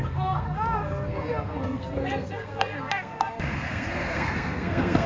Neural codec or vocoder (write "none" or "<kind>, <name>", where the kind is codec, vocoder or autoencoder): codec, SNAC